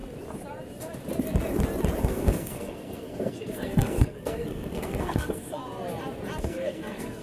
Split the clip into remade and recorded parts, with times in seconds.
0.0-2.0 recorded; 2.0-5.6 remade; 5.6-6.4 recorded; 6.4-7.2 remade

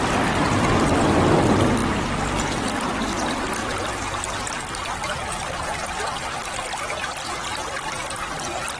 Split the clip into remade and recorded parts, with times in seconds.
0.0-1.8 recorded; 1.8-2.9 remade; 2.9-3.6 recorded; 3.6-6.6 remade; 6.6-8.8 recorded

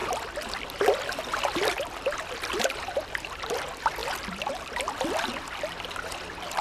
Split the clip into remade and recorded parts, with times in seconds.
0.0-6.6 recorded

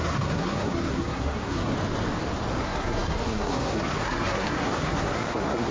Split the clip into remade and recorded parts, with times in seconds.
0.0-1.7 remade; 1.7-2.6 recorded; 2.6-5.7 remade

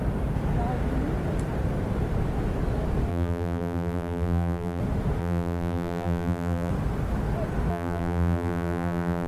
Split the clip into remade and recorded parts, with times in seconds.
0.0-3.1 recorded; 3.1-4.8 remade; 4.8-5.2 recorded; 5.2-6.7 remade; 6.7-7.7 recorded; 7.7-9.3 remade

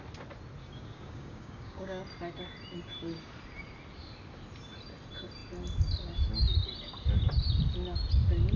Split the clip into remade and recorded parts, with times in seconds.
0.0-0.6 recorded; 0.6-2.0 remade; 2.0-8.6 recorded

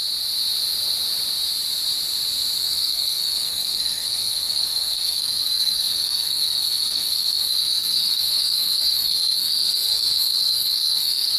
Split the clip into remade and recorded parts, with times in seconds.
0.0-2.6 recorded; 2.6-11.4 remade